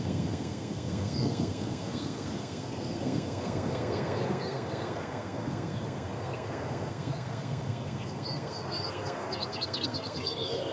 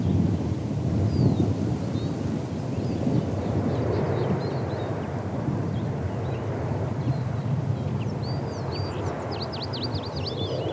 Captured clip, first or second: second